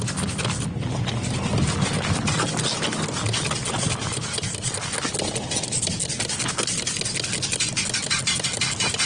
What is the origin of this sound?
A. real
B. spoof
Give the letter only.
A